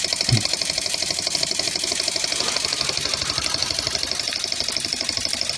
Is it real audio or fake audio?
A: real